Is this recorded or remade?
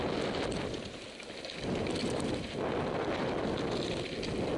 recorded